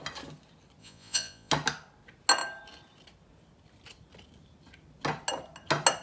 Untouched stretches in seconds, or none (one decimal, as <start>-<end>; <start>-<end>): 0.0-0.8; 1.5-6.0